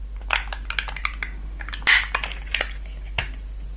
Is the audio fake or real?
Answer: real